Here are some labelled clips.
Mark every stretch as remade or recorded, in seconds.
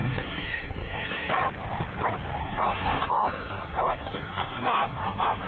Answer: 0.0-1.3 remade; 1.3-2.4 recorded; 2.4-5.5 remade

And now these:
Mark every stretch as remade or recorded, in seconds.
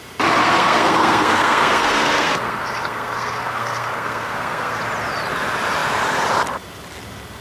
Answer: 0.0-0.4 recorded; 0.4-4.8 remade; 4.8-7.4 recorded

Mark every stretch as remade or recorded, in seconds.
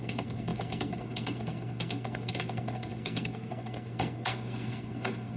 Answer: 0.0-5.4 remade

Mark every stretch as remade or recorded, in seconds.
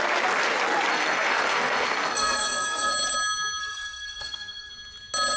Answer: 0.0-0.9 recorded; 0.9-2.9 remade; 2.9-3.6 recorded; 3.6-4.7 remade; 4.7-5.4 recorded